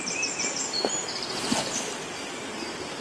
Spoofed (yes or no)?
yes